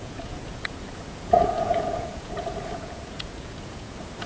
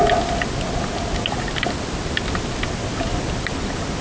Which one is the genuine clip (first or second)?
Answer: second